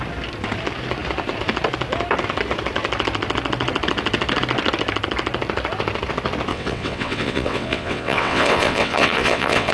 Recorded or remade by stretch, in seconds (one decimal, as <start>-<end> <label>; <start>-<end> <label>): 0.0-6.5 recorded; 6.5-9.7 remade